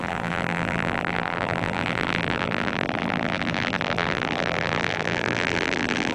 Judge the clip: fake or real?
fake